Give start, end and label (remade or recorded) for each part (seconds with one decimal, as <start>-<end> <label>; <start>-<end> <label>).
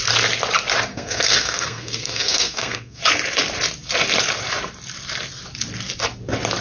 0.0-0.9 recorded; 0.9-3.0 remade; 3.0-6.6 recorded